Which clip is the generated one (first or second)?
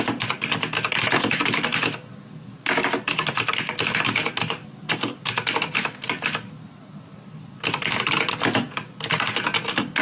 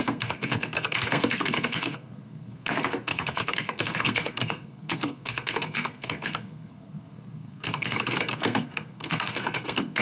second